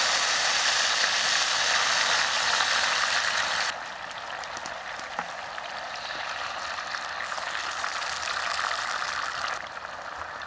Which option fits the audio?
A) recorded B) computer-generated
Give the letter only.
A